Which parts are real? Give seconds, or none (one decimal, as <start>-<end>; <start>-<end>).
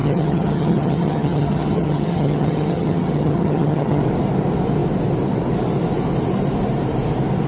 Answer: 4.0-7.5